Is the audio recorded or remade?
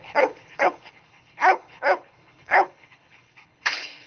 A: remade